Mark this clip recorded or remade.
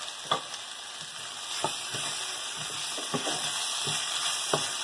recorded